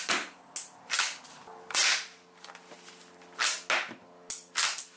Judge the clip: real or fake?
real